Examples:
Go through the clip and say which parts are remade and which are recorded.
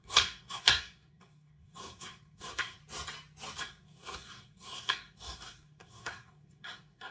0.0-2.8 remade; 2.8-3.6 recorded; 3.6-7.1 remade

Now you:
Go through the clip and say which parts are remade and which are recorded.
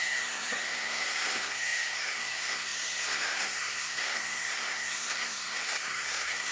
0.0-6.5 remade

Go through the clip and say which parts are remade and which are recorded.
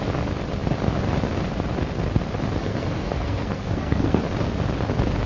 0.0-2.6 recorded; 2.6-4.2 remade; 4.2-5.3 recorded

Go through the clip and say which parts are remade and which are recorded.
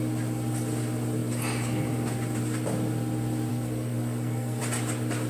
0.0-3.5 recorded; 3.5-4.6 remade; 4.6-5.3 recorded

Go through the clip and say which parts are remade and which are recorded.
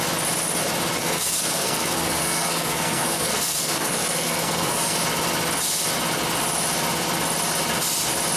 0.0-1.0 recorded; 1.0-5.0 remade; 5.0-8.4 recorded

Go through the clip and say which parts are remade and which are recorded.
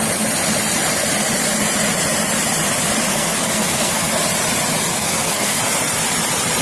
0.0-3.1 recorded; 3.1-4.1 remade; 4.1-4.9 recorded; 4.9-5.6 remade; 5.6-6.6 recorded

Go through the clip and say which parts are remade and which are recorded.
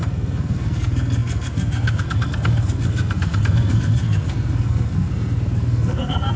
0.0-6.4 remade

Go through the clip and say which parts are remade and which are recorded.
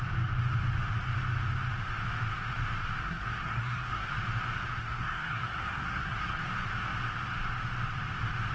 0.0-3.0 recorded; 3.0-4.1 remade; 4.1-4.8 recorded; 4.8-6.4 remade; 6.4-8.5 recorded